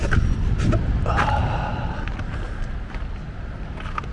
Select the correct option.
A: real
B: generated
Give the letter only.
A